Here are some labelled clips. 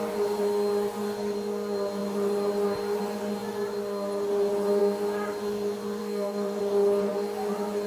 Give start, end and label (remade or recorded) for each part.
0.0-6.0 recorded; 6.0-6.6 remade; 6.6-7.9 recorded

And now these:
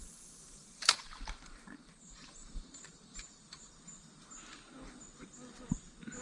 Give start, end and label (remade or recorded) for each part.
0.0-3.7 remade; 3.7-6.2 recorded

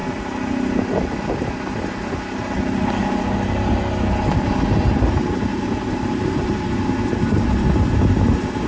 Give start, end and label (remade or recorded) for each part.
0.0-5.5 recorded; 5.5-6.9 remade; 6.9-8.7 recorded